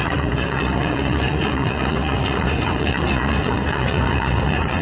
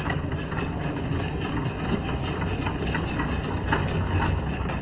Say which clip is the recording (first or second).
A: second